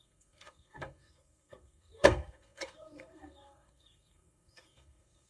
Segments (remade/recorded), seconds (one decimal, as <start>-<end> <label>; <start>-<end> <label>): 0.0-5.3 remade

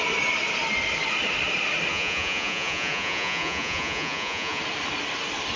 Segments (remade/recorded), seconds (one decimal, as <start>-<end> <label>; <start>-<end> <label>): 0.0-1.9 recorded; 1.9-4.6 remade; 4.6-5.6 recorded

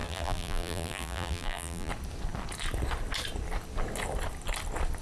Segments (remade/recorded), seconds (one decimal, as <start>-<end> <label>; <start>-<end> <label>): 0.0-1.9 remade; 1.9-5.0 recorded

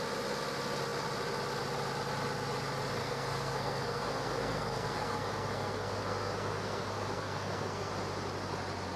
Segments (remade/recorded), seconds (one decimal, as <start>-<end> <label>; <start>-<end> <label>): 0.0-3.0 recorded; 3.0-7.9 remade; 7.9-9.0 recorded